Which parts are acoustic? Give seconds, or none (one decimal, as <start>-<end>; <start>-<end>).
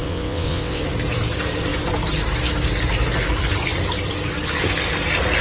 0.8-5.4